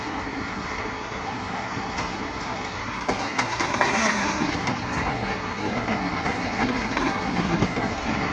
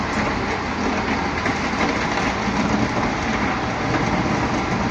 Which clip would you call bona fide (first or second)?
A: second